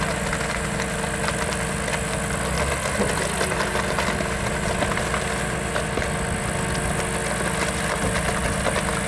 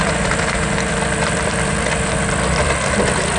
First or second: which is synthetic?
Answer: second